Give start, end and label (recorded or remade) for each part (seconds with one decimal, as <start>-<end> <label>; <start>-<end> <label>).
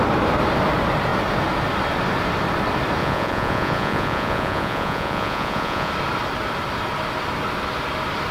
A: 0.0-3.0 recorded; 3.0-5.9 remade; 5.9-8.3 recorded